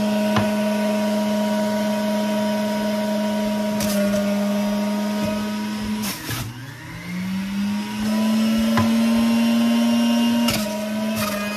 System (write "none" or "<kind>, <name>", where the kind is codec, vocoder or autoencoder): none